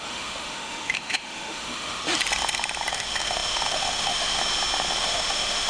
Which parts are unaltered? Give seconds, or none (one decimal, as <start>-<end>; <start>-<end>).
2.0-2.9; 4.4-5.0